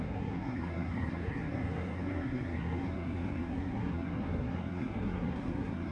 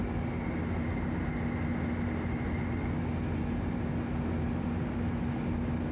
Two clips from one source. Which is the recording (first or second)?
second